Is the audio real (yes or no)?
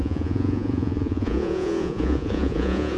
no